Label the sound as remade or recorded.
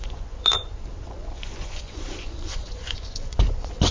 remade